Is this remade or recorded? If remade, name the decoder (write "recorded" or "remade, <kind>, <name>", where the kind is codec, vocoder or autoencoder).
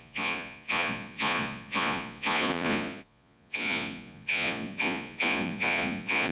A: remade, vocoder, Vocos